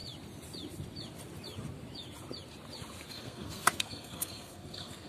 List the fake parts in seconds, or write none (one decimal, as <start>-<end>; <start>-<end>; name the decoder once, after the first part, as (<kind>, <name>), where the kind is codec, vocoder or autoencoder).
3.1-5.1 (codec, SNAC)

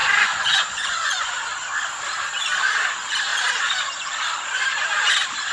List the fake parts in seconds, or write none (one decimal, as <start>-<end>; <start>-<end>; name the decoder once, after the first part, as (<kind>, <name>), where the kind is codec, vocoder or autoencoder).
0.0-1.3 (vocoder, Vocos)

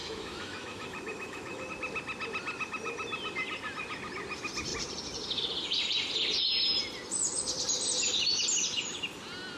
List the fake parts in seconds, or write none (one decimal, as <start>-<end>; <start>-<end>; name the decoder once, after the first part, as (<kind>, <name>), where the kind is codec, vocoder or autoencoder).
0.0-1.7 (autoencoder, DAC-VAE)

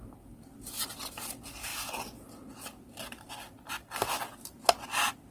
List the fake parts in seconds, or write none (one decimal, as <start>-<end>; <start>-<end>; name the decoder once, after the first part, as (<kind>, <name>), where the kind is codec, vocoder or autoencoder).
none

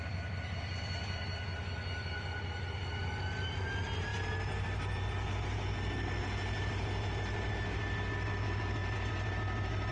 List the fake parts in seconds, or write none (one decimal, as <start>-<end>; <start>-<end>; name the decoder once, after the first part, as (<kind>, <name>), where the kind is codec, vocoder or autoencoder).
none

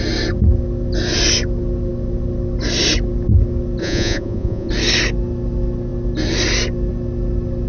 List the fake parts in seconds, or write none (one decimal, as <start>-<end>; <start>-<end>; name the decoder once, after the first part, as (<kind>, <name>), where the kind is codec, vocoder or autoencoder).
3.8-4.7 (vocoder, Vocos)